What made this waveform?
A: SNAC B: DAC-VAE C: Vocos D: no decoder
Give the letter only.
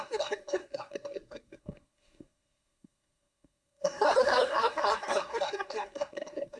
A